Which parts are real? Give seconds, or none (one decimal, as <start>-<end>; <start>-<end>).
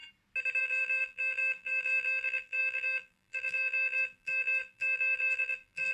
0.0-0.6